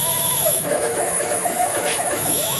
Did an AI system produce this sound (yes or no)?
yes